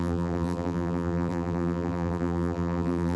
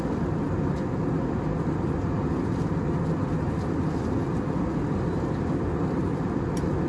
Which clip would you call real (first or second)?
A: second